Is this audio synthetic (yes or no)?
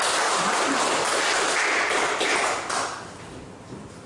no